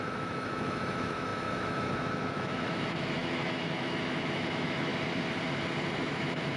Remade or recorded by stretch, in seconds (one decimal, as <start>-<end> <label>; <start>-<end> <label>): 0.0-4.9 remade; 4.9-6.0 recorded; 6.0-6.6 remade